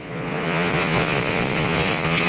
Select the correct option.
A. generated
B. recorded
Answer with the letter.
A